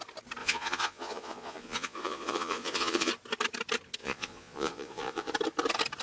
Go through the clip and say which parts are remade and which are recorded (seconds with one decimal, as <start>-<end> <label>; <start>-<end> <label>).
0.0-0.4 recorded; 0.4-3.1 remade; 3.1-4.0 recorded; 4.0-5.3 remade; 5.3-6.0 recorded